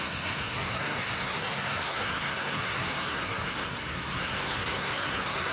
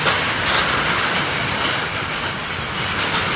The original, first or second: second